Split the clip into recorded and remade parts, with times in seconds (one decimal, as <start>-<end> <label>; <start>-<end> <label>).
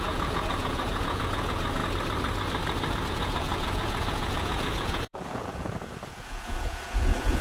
0.0-1.8 remade; 1.8-3.1 recorded; 3.1-7.4 remade